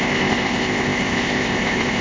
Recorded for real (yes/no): no